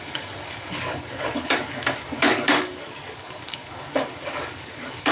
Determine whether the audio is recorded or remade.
remade